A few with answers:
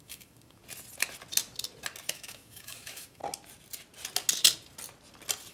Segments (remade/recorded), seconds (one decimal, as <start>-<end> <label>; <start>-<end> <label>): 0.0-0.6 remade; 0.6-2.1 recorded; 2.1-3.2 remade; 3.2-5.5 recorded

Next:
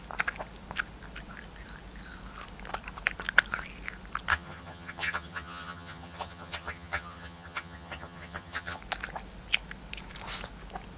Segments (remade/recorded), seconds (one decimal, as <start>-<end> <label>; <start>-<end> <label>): 0.0-4.3 recorded; 4.3-8.8 remade; 8.8-11.0 recorded

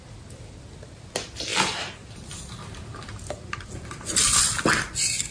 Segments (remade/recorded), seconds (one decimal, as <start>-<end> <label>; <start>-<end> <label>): 0.0-5.3 recorded

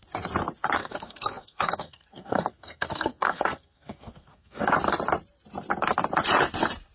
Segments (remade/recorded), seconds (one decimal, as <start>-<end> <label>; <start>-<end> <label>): 0.0-0.8 recorded; 0.8-4.7 remade; 4.7-6.9 recorded

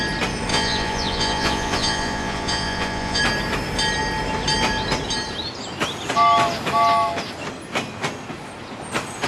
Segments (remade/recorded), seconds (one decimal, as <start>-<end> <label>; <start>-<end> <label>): 0.0-0.5 recorded; 0.5-3.2 remade; 3.2-9.3 recorded

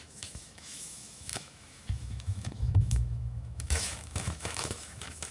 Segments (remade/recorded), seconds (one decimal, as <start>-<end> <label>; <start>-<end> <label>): 0.0-5.3 remade